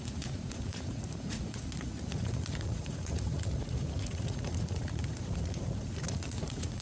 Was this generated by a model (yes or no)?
yes